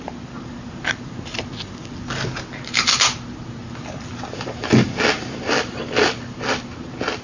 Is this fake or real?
real